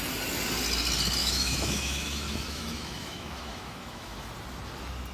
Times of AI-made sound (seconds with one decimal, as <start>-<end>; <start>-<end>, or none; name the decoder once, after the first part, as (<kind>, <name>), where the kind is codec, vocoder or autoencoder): 1.2-4.3 (autoencoder, DAC-VAE)